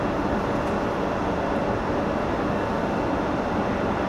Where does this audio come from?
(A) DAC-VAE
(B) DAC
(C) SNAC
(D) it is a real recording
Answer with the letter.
D